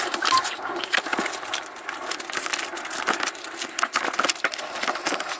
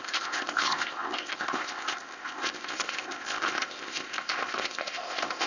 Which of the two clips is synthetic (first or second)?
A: second